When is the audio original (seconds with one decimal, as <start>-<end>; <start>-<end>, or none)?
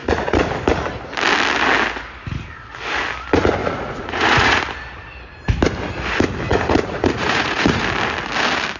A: 0.5-3.6; 4.6-6.5; 7.8-8.8